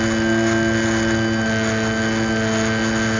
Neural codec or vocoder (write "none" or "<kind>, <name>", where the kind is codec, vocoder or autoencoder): none